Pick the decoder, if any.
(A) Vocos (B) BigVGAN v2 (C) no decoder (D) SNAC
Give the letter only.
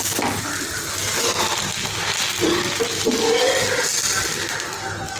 C